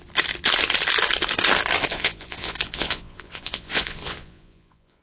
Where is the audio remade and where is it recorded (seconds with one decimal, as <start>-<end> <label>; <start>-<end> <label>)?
0.0-1.9 recorded; 1.9-5.0 remade